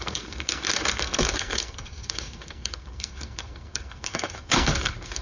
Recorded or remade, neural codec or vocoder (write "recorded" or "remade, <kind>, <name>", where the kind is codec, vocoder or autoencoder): remade, codec, SNAC